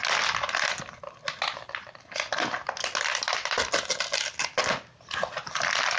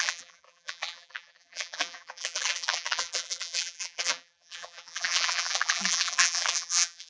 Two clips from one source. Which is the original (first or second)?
first